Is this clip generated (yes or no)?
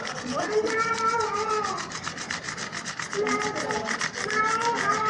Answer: no